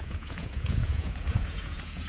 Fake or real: fake